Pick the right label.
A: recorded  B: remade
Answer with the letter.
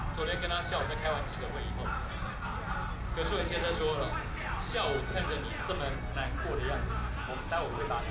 A